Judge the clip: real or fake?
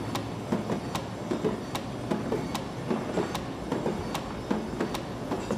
real